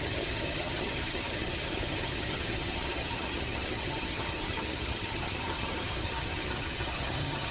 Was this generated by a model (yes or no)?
yes